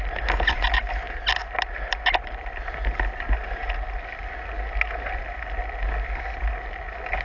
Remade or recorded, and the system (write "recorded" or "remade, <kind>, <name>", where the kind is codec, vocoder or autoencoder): recorded